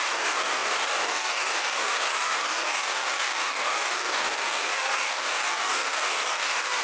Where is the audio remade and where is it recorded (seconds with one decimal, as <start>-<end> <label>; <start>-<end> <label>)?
0.0-6.8 remade